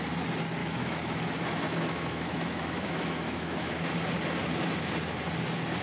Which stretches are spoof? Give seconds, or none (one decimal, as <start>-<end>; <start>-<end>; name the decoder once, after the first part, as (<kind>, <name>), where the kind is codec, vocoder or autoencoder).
0.6-3.9 (autoencoder, DAC-VAE)